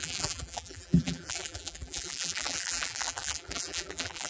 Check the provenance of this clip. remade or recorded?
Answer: remade